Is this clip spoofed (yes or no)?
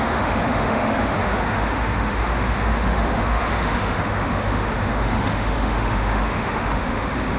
yes